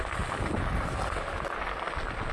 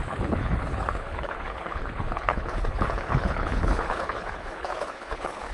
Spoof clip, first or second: second